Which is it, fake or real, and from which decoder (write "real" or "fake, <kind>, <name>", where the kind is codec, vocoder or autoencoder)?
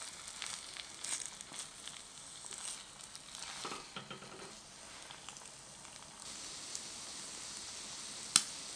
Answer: real